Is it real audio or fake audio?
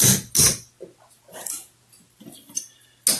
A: real